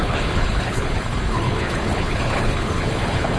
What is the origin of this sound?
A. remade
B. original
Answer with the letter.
A